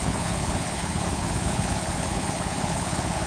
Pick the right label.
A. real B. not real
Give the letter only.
B